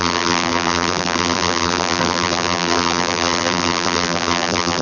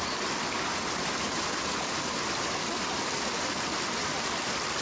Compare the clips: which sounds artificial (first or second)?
first